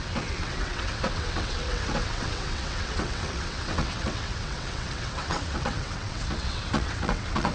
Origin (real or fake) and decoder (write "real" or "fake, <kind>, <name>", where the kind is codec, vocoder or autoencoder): fake, vocoder, WaveNeXt